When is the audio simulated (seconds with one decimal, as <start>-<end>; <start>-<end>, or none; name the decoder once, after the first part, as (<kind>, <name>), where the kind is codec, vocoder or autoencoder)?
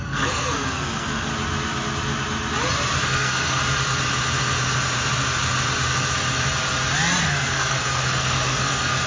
0.0-1.3 (codec, SNAC); 3.0-3.6; 7.2-9.1